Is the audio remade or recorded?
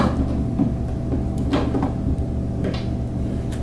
recorded